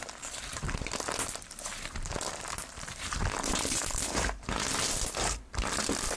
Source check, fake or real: fake